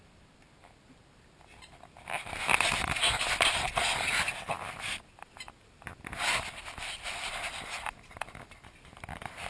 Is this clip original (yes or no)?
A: yes